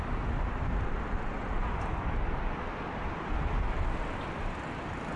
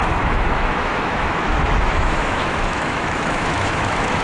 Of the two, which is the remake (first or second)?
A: second